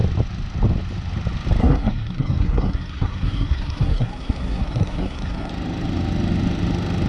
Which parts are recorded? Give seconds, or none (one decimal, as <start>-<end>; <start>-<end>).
0.0-1.6; 5.5-7.1